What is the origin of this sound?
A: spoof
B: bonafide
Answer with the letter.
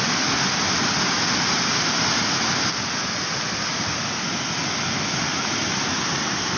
B